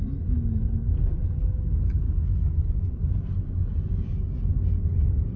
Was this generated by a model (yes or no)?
no